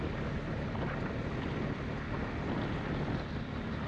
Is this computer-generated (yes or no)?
no